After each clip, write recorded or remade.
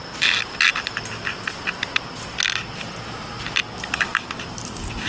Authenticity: recorded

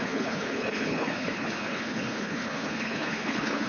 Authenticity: remade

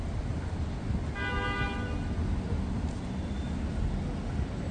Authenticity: recorded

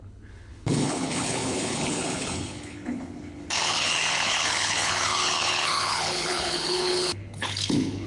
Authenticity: remade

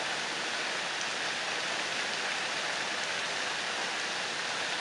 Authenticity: recorded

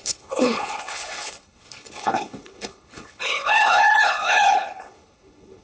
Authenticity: remade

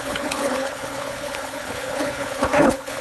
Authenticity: remade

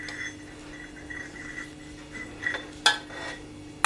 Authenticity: recorded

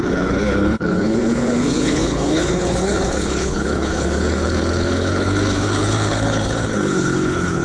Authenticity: remade